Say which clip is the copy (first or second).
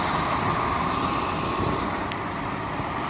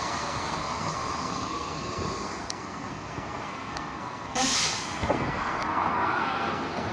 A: second